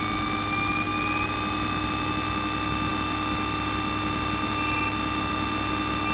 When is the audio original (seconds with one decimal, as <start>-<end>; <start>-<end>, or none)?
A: 0.0-6.1